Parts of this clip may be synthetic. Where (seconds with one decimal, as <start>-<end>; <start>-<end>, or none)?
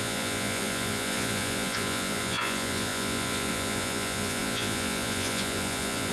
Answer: 0.0-6.1